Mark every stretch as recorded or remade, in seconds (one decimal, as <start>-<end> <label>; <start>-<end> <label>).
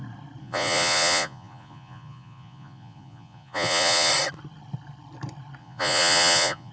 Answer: 0.0-0.4 recorded; 0.4-4.1 remade; 4.1-5.6 recorded; 5.6-6.7 remade